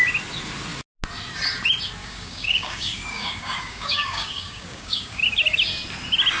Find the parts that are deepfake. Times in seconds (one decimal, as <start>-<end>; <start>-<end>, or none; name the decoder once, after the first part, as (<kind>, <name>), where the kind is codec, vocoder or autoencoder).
2.0-5.2 (codec, DAC)

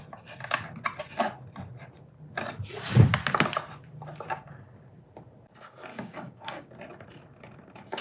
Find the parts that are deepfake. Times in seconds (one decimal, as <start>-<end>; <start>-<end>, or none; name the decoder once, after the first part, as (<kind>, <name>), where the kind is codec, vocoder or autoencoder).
5.9-6.7 (codec, DAC)

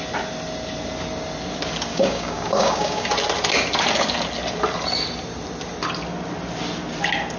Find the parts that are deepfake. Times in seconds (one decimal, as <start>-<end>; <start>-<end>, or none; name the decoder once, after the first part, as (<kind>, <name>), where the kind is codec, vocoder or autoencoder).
1.9-3.1 (codec, DAC)

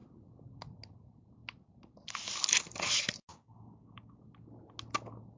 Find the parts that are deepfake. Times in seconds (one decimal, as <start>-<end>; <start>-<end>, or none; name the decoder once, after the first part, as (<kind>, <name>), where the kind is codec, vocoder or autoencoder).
3.3-4.2 (codec, DAC)

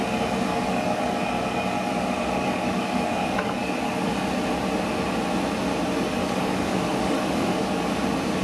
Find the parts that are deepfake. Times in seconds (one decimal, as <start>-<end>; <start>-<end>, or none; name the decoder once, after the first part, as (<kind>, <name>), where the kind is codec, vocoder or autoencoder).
0.5-4.1 (codec, DAC); 6.2-7.7

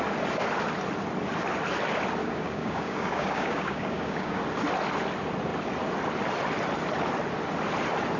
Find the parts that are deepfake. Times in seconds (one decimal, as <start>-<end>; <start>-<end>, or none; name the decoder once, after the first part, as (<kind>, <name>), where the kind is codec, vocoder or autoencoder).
2.2-4.4 (codec, DAC)

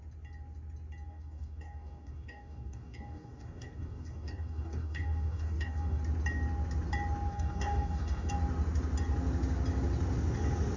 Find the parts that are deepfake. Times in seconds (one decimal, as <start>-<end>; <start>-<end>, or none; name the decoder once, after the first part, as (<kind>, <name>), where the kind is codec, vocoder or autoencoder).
1.1-6.0 (codec, DAC); 7.3-8.3